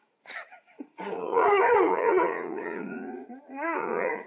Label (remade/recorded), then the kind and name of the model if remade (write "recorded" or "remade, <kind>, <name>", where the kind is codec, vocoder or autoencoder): remade, vocoder, Vocos